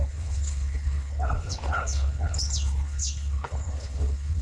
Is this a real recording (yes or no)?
no